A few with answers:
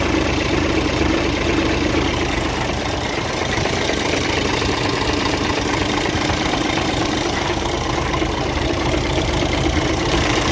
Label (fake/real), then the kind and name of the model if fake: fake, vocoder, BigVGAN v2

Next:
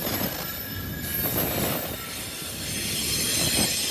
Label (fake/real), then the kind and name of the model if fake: real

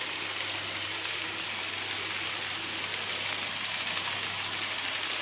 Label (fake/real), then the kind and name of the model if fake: real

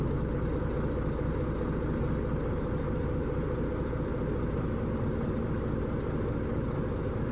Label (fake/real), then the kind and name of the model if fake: real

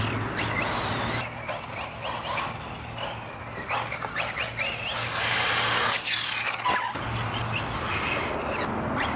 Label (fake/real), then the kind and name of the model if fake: real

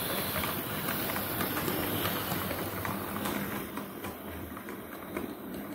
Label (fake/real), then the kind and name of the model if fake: fake, vocoder, BigVGAN v2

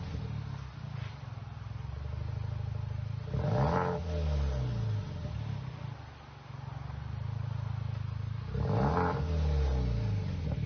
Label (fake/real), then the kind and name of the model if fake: real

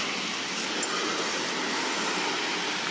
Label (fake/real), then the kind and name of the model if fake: real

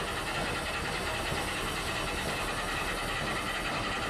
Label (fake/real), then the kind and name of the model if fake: real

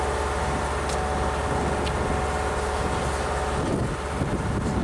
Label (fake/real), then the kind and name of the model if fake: real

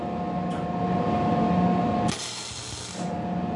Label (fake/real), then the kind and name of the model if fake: real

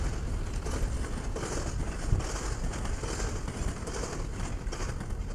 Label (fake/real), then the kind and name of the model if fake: real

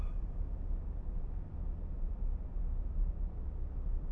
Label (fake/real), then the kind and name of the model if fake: real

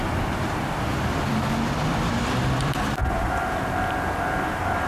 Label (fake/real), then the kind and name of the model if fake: fake, vocoder, BigVGAN v2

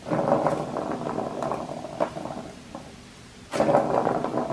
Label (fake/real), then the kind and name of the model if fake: real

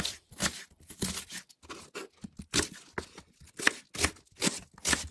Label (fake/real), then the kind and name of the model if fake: real